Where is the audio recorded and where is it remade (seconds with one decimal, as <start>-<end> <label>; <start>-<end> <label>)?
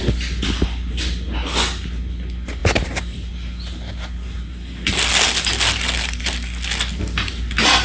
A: 0.0-7.8 recorded